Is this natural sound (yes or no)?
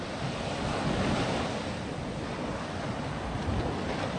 yes